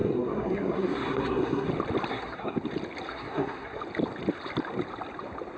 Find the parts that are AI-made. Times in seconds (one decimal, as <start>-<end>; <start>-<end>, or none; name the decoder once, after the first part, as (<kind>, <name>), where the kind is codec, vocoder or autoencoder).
0.0-1.7 (codec, SNAC); 2.1-2.6; 3.1-3.8